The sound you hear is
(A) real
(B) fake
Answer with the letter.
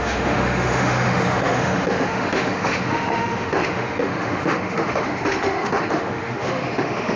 B